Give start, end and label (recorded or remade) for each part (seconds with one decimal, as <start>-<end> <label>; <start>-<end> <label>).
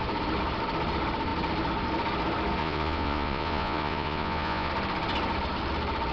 0.0-2.6 recorded; 2.6-4.7 remade; 4.7-6.1 recorded